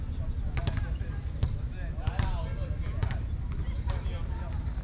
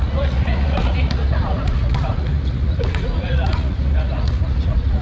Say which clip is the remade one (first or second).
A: second